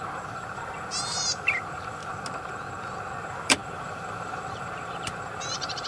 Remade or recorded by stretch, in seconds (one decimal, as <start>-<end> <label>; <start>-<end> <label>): 0.0-2.0 remade; 2.0-3.2 recorded; 3.2-5.9 remade